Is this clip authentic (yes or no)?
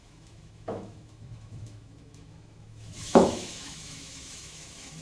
no